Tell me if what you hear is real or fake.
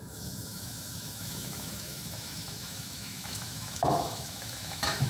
fake